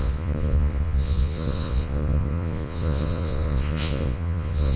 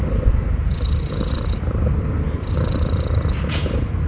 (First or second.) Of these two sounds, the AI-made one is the first